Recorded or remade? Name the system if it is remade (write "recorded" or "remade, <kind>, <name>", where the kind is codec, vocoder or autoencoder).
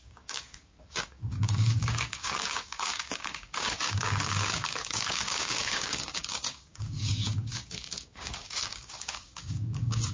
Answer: remade, codec, DAC